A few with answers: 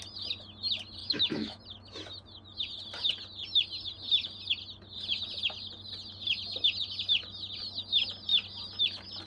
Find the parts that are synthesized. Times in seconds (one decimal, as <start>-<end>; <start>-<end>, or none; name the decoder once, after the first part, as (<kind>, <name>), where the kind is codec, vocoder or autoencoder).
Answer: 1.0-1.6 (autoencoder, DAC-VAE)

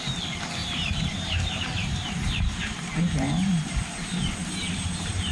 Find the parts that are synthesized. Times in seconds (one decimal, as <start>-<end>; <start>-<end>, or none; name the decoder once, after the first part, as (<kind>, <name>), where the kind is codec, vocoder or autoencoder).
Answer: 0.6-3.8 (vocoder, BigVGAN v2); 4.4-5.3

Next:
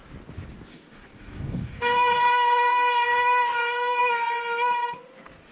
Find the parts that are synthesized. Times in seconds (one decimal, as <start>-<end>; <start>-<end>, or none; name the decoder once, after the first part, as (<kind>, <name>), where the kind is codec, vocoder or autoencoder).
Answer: 0.7-4.0 (codec, DAC)

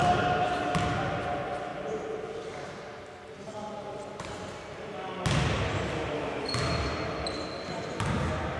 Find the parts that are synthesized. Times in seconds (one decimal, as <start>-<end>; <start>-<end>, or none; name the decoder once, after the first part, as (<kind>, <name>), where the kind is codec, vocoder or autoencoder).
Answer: 1.7-2.8 (vocoder, BigVGAN v2)